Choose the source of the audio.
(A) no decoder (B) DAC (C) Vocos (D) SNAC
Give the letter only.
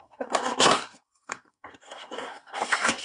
D